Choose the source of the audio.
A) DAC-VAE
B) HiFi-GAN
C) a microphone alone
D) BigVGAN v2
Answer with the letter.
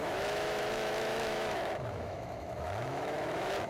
A